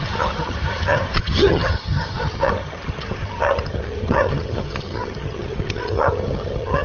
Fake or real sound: fake